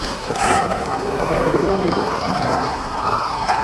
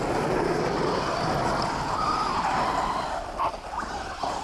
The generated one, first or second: first